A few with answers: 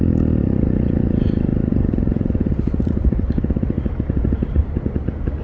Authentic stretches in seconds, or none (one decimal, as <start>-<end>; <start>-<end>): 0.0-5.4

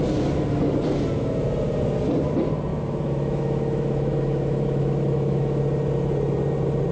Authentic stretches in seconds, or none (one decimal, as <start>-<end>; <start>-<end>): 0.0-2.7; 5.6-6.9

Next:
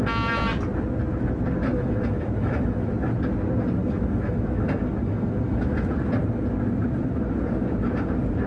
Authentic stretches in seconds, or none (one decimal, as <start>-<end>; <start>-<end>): 0.0-1.7; 2.9-3.8; 5.9-8.5